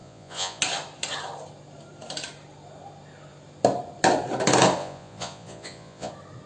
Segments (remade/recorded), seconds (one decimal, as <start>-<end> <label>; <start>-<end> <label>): 0.0-0.6 remade; 0.6-4.8 recorded; 4.8-6.1 remade; 6.1-6.5 recorded